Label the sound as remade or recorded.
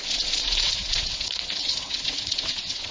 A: remade